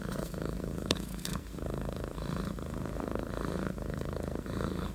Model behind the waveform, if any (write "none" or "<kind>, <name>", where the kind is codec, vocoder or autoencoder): codec, SNAC